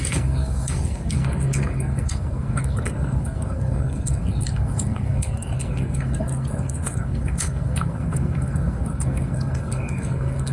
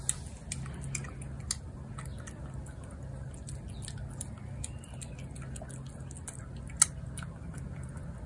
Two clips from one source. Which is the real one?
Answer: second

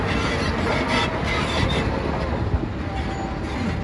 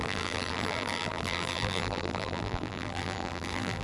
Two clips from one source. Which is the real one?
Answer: first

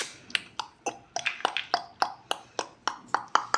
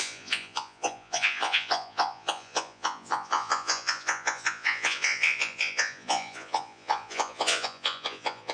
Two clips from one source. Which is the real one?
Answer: first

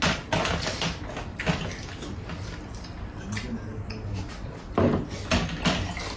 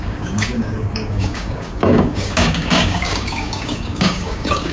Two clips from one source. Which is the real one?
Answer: first